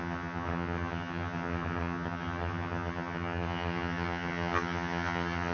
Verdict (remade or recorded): remade